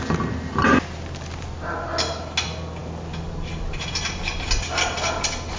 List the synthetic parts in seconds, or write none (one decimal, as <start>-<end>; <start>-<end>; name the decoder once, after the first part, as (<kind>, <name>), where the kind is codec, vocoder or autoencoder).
none